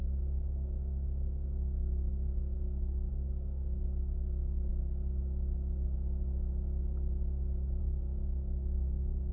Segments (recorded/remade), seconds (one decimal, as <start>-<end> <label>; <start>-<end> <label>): 0.0-4.7 remade; 4.7-7.8 recorded; 7.8-9.3 remade